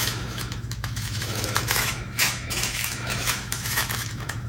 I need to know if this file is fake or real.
fake